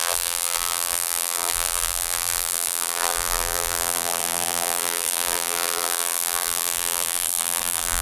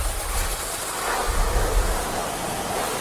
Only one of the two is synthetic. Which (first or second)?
first